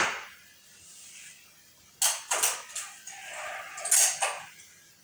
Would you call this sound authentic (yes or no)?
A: yes